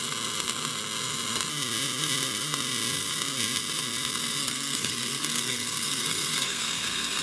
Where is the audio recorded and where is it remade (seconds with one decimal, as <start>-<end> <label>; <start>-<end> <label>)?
0.0-4.4 recorded; 4.4-7.2 remade